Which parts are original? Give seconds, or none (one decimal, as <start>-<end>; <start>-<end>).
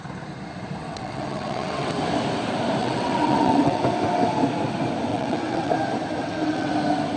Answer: 0.0-0.8; 1.9-2.8; 3.8-5.1; 5.7-6.2; 6.7-7.2